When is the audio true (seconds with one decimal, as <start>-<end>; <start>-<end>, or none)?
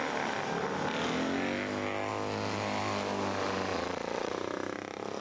0.0-3.7; 4.3-5.2